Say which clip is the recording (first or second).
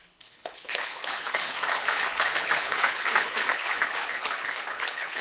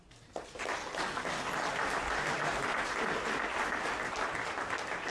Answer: second